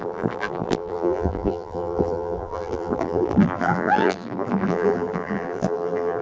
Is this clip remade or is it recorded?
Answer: remade